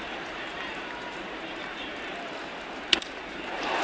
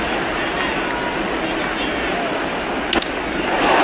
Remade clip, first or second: first